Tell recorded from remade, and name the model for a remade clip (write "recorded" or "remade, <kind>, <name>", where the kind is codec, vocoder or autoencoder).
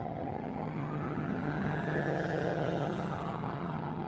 remade, vocoder, HiFi-GAN